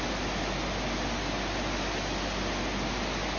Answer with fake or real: real